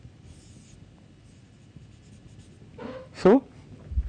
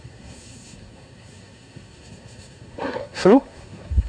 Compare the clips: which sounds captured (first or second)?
first